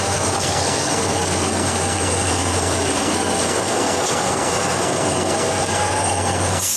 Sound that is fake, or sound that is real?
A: fake